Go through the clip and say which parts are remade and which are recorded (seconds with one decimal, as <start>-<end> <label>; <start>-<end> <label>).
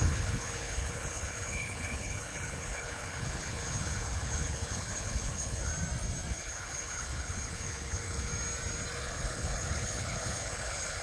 0.0-5.7 remade; 5.7-6.3 recorded; 6.3-8.3 remade; 8.3-9.0 recorded; 9.0-11.0 remade